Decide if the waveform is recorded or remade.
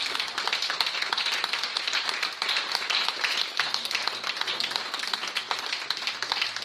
recorded